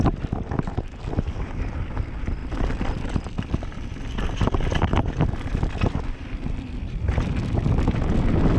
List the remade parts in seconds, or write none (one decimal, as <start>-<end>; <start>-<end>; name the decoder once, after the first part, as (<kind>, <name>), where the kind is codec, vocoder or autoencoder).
none